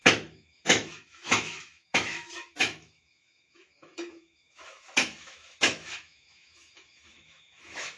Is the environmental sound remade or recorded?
remade